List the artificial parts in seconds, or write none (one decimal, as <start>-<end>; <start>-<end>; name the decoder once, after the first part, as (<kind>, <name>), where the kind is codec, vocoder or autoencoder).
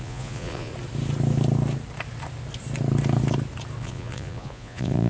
0.0-0.7 (vocoder, Vocos); 3.8-5.1